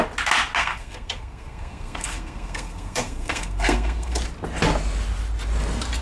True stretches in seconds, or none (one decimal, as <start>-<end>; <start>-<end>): 0.0-0.6; 4.2-6.0